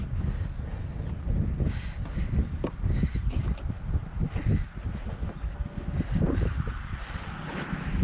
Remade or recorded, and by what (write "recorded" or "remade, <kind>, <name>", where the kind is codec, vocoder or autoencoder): recorded